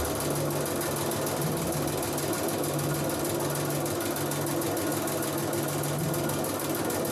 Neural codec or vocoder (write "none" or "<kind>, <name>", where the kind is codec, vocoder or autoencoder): none